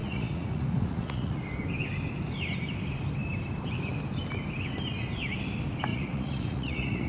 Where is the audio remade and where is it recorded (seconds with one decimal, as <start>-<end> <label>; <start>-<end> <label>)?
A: 0.0-1.4 remade; 1.4-5.9 recorded; 5.9-7.1 remade